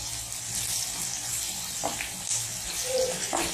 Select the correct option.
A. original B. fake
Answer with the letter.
A